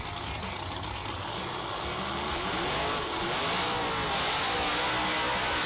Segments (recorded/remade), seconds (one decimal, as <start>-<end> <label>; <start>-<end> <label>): 0.0-5.7 recorded